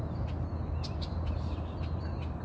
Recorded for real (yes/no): yes